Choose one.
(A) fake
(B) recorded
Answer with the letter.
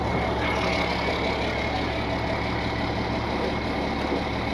B